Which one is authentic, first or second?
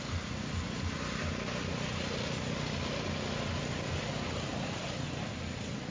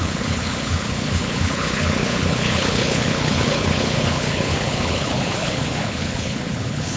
first